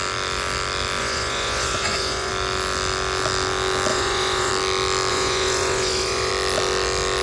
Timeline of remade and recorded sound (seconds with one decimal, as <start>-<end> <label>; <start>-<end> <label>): 0.0-1.0 recorded; 1.0-2.3 remade; 2.3-3.9 recorded; 3.9-4.5 remade; 4.5-5.1 recorded; 5.1-6.3 remade; 6.3-7.2 recorded